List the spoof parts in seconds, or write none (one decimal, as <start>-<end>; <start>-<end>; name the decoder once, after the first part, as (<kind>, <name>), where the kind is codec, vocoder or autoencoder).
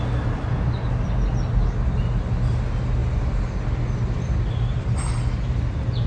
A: none